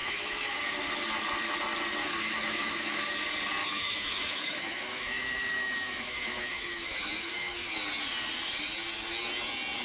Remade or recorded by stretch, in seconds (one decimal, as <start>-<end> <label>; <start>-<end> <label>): 0.0-0.6 remade; 0.6-2.0 recorded; 2.0-3.1 remade; 3.1-3.6 recorded; 3.6-7.7 remade; 7.7-9.8 recorded